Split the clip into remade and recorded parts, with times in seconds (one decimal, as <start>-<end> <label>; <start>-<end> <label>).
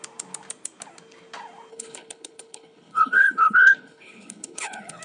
0.0-1.7 recorded; 1.7-5.0 remade